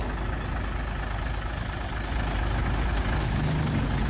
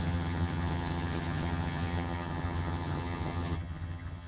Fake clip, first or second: second